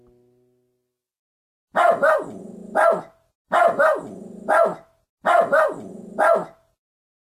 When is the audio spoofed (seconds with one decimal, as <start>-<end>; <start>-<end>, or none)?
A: none